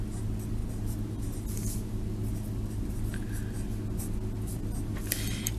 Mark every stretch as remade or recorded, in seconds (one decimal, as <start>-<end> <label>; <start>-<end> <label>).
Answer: 0.0-5.6 recorded